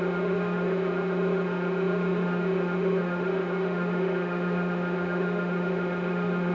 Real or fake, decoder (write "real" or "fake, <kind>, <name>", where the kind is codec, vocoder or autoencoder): fake, autoencoder, DAC-VAE